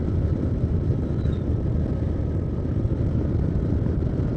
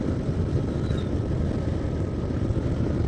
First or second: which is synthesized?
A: second